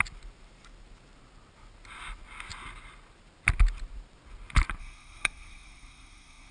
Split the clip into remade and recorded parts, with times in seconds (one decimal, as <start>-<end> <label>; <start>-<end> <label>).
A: 0.0-4.8 recorded; 4.8-6.5 remade